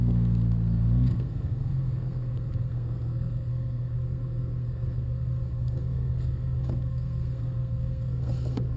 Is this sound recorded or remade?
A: remade